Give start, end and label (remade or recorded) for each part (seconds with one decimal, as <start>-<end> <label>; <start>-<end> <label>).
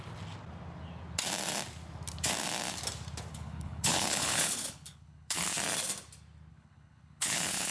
0.0-3.3 recorded; 3.3-5.5 remade; 5.5-6.5 recorded; 6.5-7.7 remade